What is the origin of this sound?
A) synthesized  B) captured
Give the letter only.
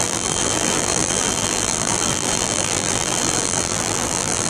A